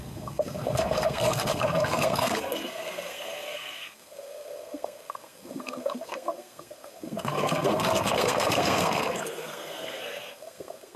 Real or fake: fake